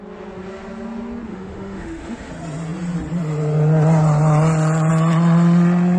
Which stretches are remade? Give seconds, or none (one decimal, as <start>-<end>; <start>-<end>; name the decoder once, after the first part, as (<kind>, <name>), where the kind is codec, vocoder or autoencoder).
1.3-2.3 (autoencoder, DAC-VAE)